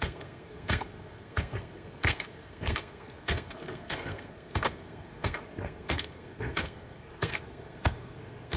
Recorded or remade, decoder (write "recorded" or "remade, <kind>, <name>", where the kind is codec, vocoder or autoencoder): remade, codec, SNAC